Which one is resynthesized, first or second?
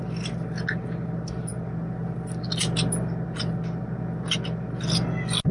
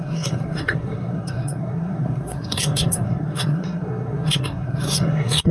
second